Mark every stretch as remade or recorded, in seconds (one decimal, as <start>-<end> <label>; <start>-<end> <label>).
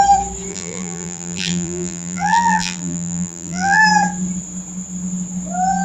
0.0-0.5 recorded; 0.5-3.8 remade; 3.8-5.8 recorded